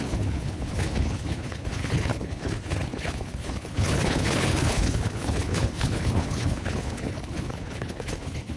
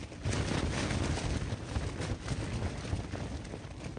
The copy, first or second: first